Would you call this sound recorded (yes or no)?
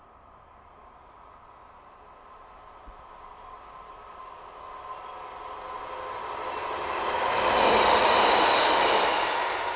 yes